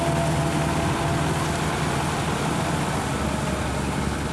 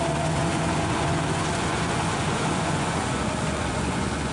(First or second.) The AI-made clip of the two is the second